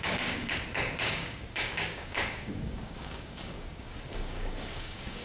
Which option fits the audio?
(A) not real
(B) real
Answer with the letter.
A